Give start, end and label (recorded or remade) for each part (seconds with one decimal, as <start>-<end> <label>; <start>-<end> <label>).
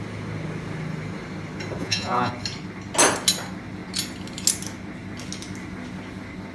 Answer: 0.0-1.8 recorded; 1.8-2.3 remade; 2.3-6.5 recorded